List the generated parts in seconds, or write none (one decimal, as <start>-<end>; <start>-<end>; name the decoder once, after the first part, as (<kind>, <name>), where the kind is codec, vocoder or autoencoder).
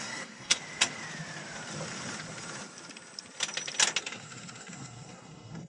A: 0.0-0.6 (codec, SNAC); 4.0-5.7